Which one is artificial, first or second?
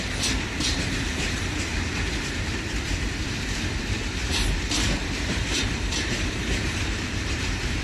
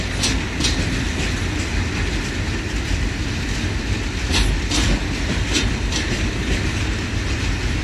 first